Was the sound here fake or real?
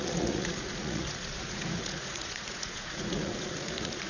fake